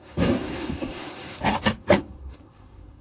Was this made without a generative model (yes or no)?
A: no